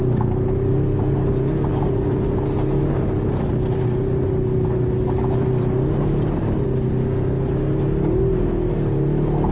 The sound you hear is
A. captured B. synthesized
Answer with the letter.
A